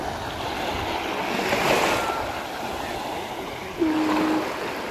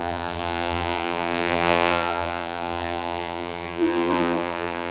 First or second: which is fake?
second